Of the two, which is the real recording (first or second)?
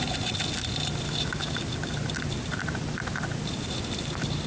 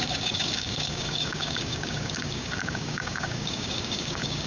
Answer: first